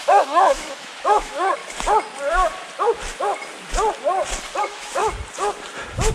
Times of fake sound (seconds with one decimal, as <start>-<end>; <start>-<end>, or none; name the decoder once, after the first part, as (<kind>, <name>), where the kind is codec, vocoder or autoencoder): 0.0-1.6 (autoencoder, DAC-VAE); 4.6-5.0